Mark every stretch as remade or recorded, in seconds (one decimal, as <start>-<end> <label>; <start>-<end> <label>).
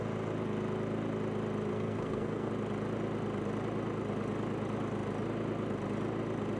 0.0-1.7 recorded; 1.7-2.5 remade; 2.5-6.6 recorded